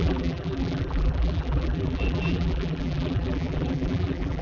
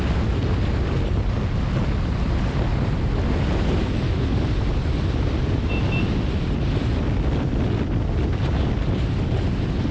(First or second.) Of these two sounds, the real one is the second